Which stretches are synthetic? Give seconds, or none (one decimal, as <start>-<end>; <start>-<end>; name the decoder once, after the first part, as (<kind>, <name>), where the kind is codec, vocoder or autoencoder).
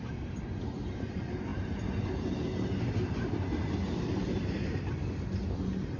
none